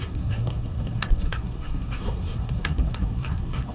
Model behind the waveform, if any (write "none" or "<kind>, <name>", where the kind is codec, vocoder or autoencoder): codec, SNAC